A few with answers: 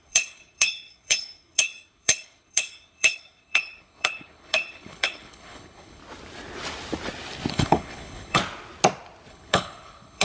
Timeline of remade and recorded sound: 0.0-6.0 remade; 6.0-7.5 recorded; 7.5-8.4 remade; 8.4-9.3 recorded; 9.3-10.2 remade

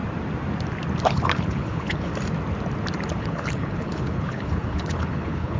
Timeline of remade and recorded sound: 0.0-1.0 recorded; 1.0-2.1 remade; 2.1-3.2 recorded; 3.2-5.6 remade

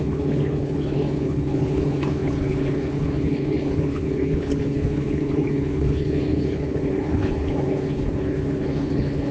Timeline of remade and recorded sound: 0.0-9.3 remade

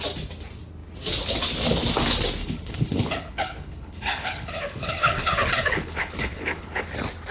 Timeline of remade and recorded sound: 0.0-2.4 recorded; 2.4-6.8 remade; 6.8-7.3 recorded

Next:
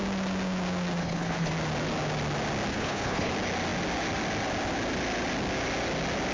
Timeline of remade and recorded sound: 0.0-1.0 recorded; 1.0-1.5 remade; 1.5-2.7 recorded; 2.7-3.3 remade; 3.3-6.3 recorded

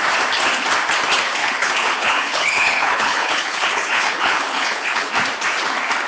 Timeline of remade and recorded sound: 0.0-1.4 recorded; 1.4-5.1 remade; 5.1-6.1 recorded

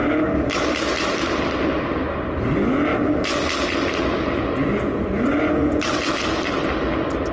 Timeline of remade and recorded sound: 0.0-7.3 recorded

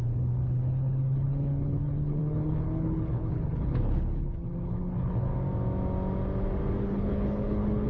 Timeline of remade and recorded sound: 0.0-5.3 remade; 5.3-6.8 recorded; 6.8-7.9 remade